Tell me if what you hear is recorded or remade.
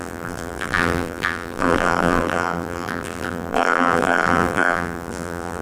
remade